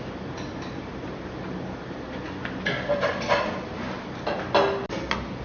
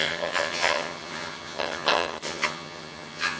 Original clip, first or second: first